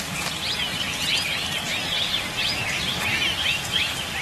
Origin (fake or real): real